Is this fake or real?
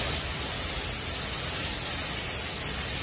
real